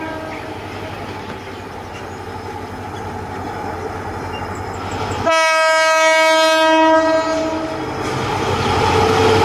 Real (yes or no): yes